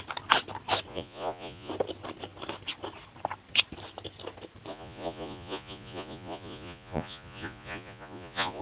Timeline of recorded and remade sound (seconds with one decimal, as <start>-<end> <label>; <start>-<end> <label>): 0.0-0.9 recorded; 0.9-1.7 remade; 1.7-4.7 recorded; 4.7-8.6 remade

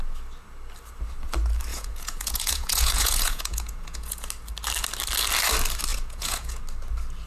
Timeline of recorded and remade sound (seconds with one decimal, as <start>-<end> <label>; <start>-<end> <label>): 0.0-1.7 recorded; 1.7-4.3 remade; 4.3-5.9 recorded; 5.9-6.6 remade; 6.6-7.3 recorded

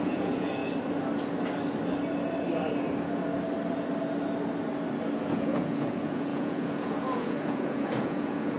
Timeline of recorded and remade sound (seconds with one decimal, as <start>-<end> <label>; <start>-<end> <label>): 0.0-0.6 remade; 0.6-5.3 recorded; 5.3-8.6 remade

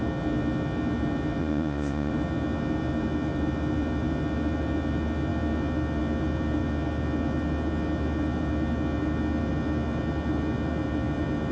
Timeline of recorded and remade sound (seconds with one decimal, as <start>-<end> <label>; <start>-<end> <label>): 0.0-1.4 recorded; 1.4-2.1 remade; 2.1-11.5 recorded

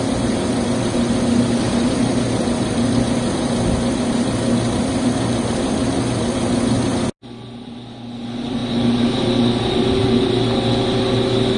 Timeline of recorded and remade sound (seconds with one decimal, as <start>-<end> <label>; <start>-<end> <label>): 0.0-11.6 recorded

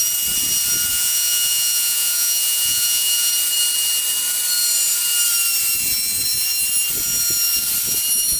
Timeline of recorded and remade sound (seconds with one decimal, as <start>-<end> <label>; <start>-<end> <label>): 0.0-0.9 recorded; 0.9-3.3 remade; 3.3-8.4 recorded